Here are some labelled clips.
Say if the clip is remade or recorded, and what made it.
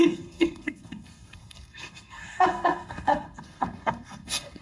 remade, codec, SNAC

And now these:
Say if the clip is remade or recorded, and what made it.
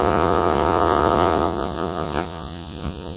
remade, vocoder, Vocos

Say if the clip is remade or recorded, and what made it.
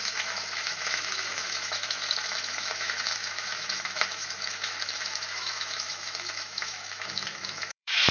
remade, autoencoder, DAC-VAE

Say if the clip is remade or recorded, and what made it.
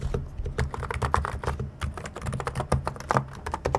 recorded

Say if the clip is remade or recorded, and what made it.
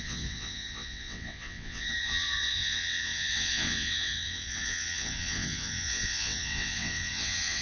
remade, vocoder, WaveNeXt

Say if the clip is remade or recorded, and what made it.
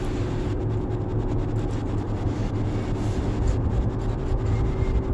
recorded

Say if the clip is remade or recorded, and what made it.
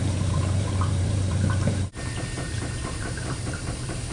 remade, vocoder, BigVGAN v2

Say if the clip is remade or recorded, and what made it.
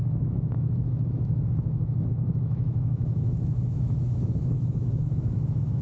remade, autoencoder, DAC-VAE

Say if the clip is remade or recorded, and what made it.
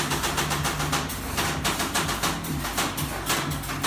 recorded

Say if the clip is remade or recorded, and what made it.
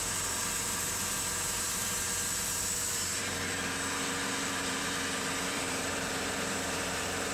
remade, vocoder, BigVGAN v2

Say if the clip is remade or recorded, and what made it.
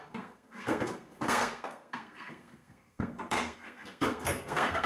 remade, codec, SNAC